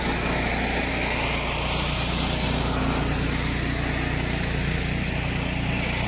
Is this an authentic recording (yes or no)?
yes